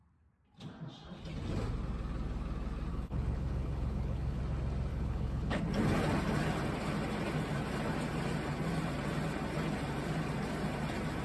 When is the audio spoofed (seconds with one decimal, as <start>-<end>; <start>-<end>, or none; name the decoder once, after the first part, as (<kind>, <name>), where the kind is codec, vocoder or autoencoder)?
2.9-4.4 (codec, HILCodec); 4.9-5.6